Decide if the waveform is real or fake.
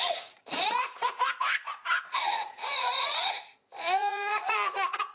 fake